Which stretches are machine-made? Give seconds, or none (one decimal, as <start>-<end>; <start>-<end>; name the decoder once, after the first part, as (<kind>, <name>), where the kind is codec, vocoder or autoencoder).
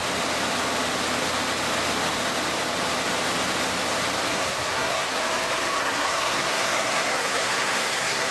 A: 4.3-5.2 (codec, SNAC); 5.8-8.3